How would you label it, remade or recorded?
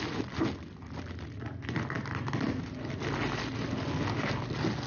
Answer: recorded